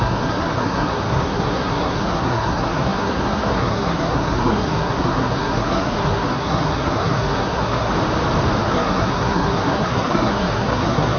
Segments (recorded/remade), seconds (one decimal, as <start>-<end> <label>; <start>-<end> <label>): 0.0-7.9 remade; 7.9-8.6 recorded; 8.6-11.2 remade